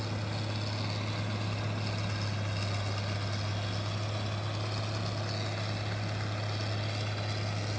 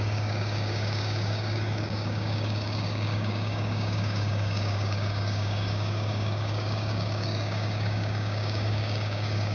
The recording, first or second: first